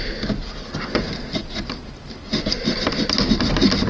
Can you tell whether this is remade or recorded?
recorded